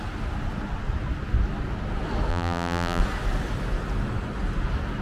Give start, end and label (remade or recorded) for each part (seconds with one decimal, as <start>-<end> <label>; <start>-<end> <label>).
0.0-2.3 recorded; 2.3-3.0 remade; 3.0-5.0 recorded